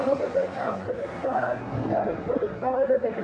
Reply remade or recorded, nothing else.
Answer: remade